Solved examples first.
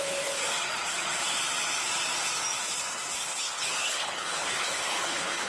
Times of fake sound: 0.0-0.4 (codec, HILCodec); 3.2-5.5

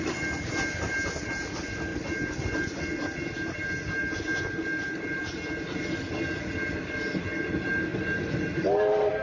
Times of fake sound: none

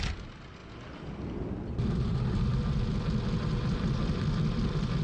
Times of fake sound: none

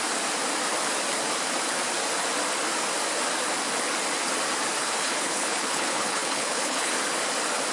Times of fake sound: 4.8-6.9 (codec, HILCodec)

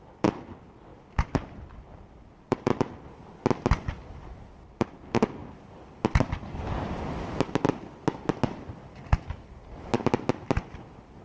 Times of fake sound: none

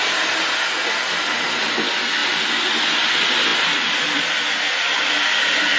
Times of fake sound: none